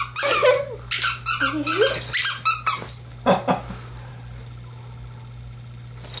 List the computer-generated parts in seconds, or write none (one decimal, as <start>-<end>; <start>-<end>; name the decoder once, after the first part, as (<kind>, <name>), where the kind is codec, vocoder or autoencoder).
none